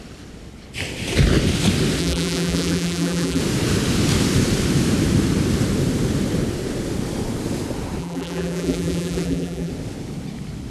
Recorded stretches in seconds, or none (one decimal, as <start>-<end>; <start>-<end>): 0.0-2.0; 3.4-8.0; 9.7-10.7